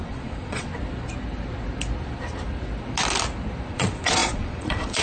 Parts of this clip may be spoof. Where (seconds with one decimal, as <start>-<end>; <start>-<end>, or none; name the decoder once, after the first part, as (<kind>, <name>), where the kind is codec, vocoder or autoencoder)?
0.0-0.7 (vocoder, Vocos); 3.7-5.0